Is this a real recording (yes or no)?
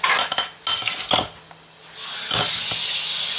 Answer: yes